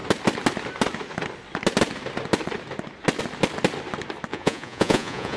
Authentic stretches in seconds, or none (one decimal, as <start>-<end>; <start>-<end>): 0.0-4.3